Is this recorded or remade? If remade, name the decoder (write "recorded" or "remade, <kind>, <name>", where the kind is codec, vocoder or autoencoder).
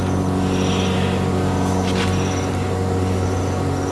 recorded